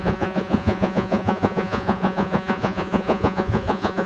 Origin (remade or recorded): remade